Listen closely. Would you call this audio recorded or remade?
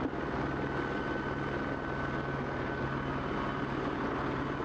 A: recorded